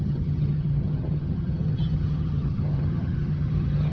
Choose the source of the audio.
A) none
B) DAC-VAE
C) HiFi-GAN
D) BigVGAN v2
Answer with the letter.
C